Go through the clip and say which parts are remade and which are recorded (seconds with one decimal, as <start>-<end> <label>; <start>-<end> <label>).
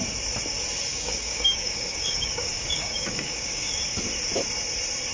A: 0.0-0.9 recorded; 0.9-4.0 remade; 4.0-5.1 recorded